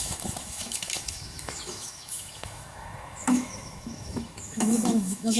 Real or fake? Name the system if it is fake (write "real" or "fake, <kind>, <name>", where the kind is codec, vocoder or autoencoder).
fake, autoencoder, DAC-VAE